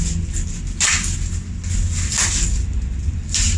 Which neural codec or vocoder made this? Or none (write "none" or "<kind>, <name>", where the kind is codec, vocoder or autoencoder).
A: none